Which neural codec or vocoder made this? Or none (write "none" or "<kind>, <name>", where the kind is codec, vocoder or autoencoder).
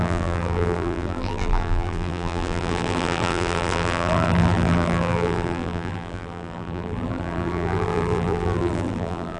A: vocoder, BigVGAN v2